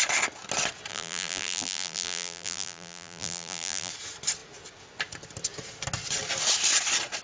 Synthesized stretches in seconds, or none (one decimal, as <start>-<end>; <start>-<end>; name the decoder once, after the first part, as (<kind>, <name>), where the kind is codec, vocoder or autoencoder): 0.9-3.9 (vocoder, BigVGAN v2)